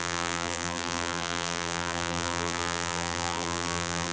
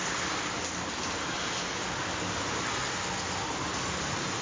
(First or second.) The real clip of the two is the second